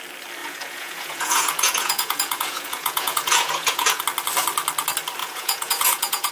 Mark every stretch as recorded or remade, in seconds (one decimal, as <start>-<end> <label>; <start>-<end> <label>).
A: 0.0-0.4 recorded; 0.4-4.0 remade; 4.0-5.2 recorded; 5.2-6.3 remade